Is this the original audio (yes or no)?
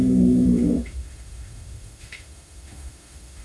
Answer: no